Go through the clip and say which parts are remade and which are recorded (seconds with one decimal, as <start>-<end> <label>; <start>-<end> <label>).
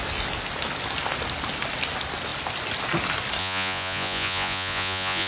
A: 0.0-3.4 recorded; 3.4-5.3 remade